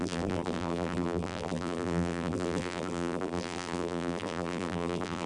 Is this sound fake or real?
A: fake